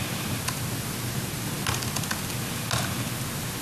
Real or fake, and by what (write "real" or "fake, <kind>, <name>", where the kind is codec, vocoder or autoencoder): real